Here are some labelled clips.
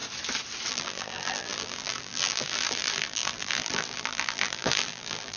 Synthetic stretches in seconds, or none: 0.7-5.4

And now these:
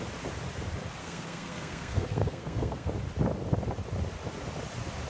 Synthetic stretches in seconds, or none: 1.0-2.9

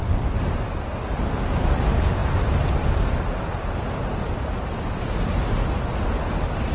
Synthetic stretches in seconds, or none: none

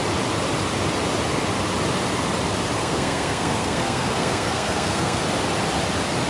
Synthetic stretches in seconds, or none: 2.8-5.2

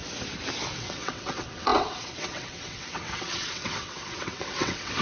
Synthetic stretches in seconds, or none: 0.7-5.0

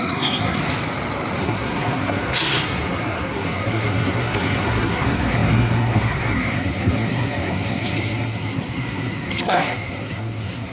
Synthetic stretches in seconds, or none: 0.0-0.6; 1.4-10.7